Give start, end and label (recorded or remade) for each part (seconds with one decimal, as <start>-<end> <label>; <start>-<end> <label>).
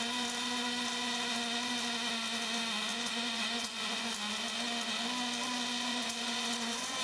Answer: 0.0-2.9 recorded; 2.9-4.1 remade; 4.1-5.9 recorded; 5.9-7.0 remade